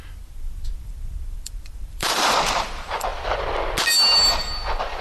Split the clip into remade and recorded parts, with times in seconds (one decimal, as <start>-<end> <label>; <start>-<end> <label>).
0.0-3.1 remade; 3.1-5.0 recorded